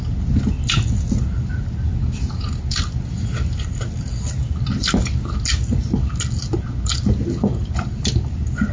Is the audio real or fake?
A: real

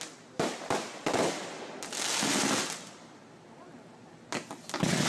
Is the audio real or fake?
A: real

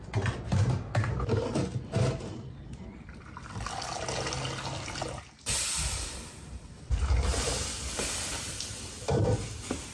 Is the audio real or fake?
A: real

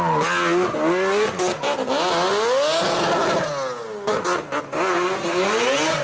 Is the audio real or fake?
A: real